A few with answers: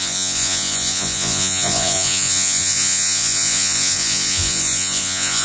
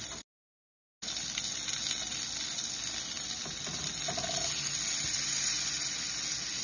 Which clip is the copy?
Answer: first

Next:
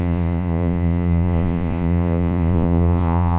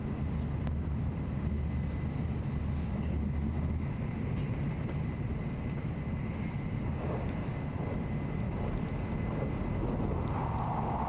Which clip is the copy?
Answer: first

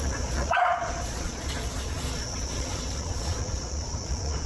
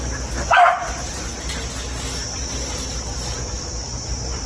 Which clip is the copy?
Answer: first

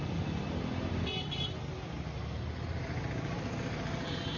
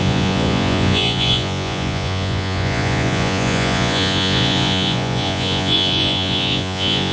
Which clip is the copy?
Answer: second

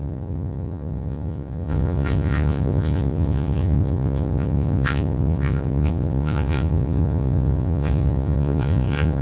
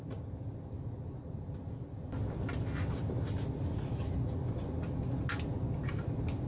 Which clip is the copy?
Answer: first